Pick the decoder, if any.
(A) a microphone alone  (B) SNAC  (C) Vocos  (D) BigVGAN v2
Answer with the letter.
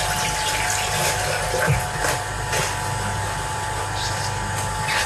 A